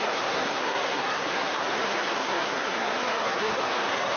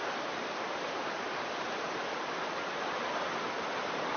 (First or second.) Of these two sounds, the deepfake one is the first